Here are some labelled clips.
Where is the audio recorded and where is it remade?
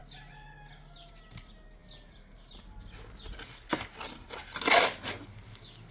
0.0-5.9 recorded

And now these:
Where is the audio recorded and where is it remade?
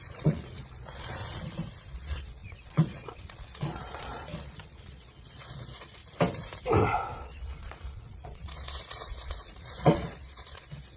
0.0-1.2 remade; 1.2-1.9 recorded; 1.9-6.0 remade; 6.0-7.2 recorded; 7.2-11.0 remade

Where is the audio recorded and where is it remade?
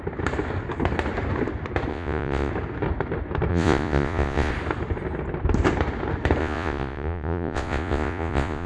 0.0-1.9 recorded; 1.9-2.5 remade; 2.5-3.5 recorded; 3.5-4.5 remade; 4.5-6.4 recorded; 6.4-8.7 remade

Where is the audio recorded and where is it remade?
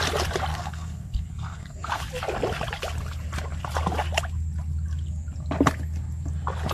0.0-0.5 recorded; 0.5-2.0 remade; 2.0-6.7 recorded